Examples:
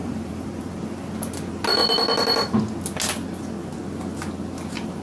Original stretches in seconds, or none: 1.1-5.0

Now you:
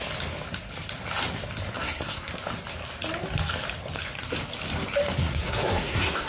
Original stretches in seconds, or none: 0.0-1.8; 2.3-5.2

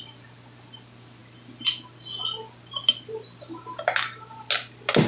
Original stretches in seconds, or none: 0.0-5.1

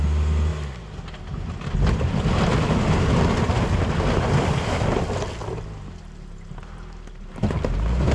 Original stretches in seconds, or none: 0.0-8.1

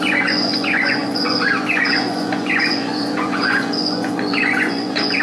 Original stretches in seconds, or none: none

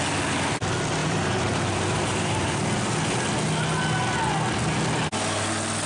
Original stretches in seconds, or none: 0.0-1.0; 2.6-5.9

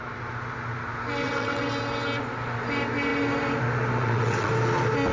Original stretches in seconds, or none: 0.0-1.2; 1.7-4.0; 4.5-5.1